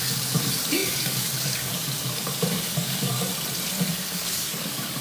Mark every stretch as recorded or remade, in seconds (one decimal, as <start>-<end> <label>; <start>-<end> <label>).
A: 0.0-3.3 remade; 3.3-3.9 recorded; 3.9-5.0 remade